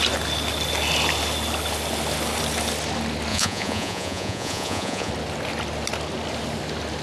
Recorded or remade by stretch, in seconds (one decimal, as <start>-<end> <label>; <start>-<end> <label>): 0.0-3.3 recorded; 3.3-5.1 remade; 5.1-7.0 recorded